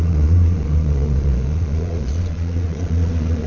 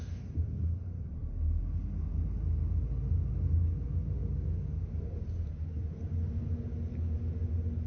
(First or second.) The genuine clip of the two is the second